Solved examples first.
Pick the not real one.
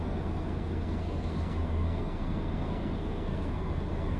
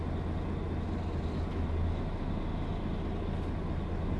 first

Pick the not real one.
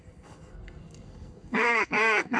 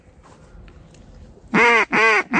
first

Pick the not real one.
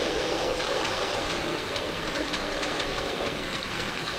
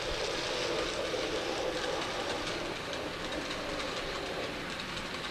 first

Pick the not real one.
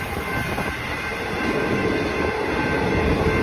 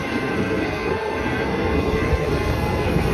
second